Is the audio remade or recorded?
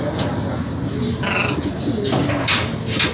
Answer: recorded